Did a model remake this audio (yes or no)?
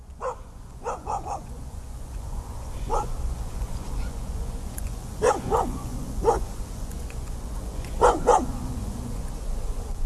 yes